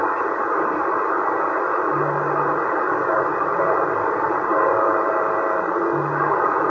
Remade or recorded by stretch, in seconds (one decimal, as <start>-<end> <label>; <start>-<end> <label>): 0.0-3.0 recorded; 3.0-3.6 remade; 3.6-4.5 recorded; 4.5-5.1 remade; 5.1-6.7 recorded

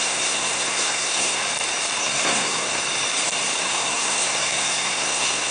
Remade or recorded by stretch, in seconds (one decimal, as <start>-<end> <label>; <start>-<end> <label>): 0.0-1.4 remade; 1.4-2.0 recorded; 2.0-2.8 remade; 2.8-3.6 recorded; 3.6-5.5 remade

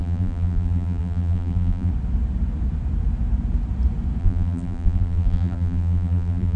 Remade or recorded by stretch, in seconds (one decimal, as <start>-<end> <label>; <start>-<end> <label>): 0.0-1.9 remade; 1.9-4.2 recorded; 4.2-6.6 remade

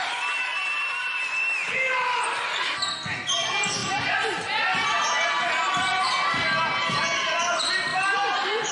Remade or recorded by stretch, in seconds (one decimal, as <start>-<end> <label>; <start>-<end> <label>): 0.0-3.8 recorded; 3.8-6.1 remade; 6.1-7.9 recorded; 7.9-8.7 remade

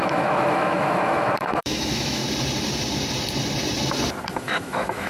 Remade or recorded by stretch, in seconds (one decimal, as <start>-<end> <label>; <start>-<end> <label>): 0.0-2.2 remade; 2.2-4.3 recorded; 4.3-5.1 remade

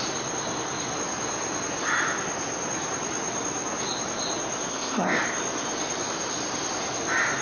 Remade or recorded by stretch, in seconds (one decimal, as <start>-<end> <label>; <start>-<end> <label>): 0.0-4.7 recorded; 4.7-5.2 remade; 5.2-7.4 recorded

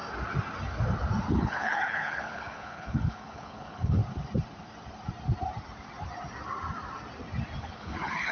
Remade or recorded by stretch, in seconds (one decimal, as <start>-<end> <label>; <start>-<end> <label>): 0.0-1.3 recorded; 1.3-4.0 remade; 4.0-7.6 recorded; 7.6-8.3 remade